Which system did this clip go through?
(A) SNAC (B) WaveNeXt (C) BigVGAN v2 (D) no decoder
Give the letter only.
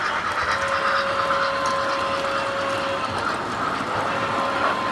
D